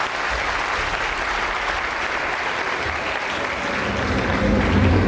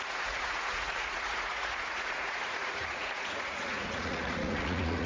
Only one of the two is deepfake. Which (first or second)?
second